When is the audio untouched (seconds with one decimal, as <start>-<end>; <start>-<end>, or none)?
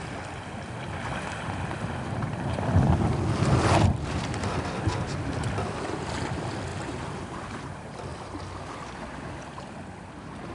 0.0-6.7; 7.7-10.5